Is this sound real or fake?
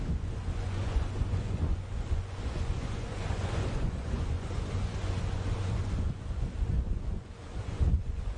fake